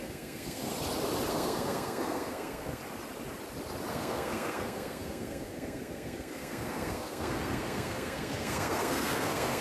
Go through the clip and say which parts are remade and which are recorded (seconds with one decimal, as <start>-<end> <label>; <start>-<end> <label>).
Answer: 0.0-0.7 remade; 0.7-1.3 recorded; 1.3-2.8 remade; 2.8-3.9 recorded; 3.9-9.6 remade